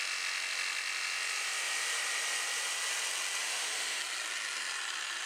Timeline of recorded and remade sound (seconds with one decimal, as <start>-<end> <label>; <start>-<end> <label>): 0.0-3.4 recorded; 3.4-4.0 remade; 4.0-5.3 recorded